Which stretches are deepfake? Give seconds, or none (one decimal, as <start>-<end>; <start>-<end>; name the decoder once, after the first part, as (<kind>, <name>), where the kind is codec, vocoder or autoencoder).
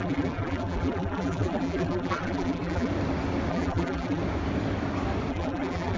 0.0-2.9 (vocoder, BigVGAN v2); 3.5-4.2; 5.3-6.0